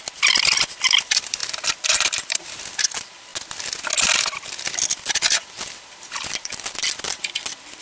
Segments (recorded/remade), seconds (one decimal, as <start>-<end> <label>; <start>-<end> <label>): 0.0-3.3 remade; 3.3-5.0 recorded; 5.0-7.8 remade